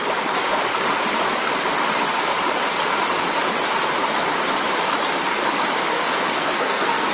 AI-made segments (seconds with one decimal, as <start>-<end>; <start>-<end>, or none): 5.9-7.1